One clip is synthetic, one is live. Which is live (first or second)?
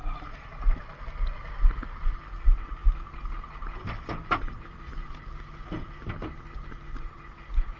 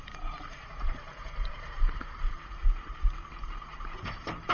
first